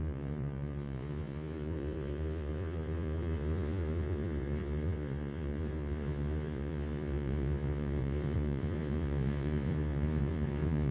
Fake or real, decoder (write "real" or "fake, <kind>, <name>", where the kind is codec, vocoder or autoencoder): fake, vocoder, Vocos